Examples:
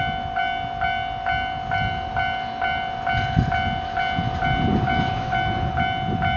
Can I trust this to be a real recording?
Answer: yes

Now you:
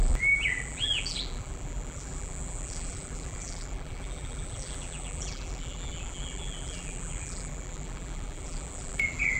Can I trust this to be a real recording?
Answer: no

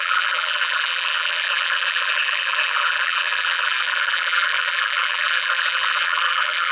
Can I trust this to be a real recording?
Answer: no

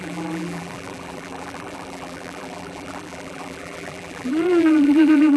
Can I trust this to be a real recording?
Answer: no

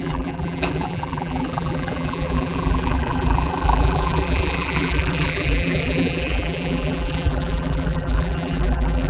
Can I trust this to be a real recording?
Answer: no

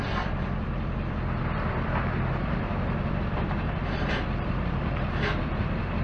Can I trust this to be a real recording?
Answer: no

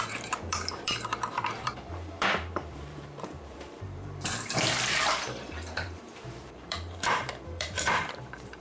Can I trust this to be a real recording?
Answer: no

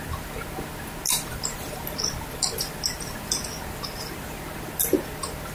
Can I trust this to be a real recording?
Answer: yes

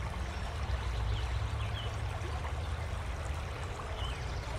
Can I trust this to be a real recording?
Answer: yes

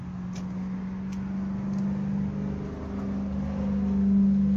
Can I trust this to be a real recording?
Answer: yes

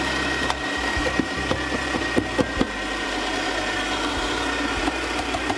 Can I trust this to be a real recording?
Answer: no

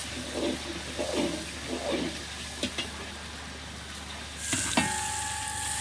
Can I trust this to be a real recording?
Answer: yes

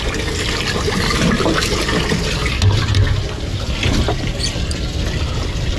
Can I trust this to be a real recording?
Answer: yes